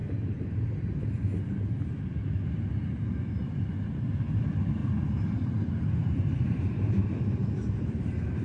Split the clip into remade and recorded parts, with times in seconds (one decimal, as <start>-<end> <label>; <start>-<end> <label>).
0.0-1.6 recorded; 1.6-2.2 remade; 2.2-3.3 recorded; 3.3-7.0 remade; 7.0-7.7 recorded; 7.7-8.4 remade